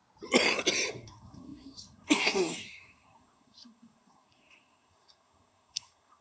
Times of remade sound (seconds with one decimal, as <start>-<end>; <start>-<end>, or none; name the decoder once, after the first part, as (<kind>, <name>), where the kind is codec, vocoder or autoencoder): 0.9-6.2 (codec, SNAC)

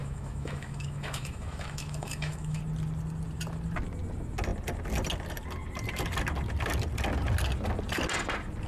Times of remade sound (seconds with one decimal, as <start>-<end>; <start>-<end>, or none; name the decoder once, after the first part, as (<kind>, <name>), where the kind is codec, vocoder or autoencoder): 0.0-2.6 (autoencoder, DAC-VAE)